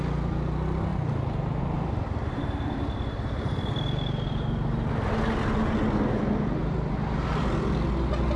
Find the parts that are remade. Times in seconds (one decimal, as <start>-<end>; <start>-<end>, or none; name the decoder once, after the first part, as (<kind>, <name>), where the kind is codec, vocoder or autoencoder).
0.9-3.7 (vocoder, BigVGAN v2)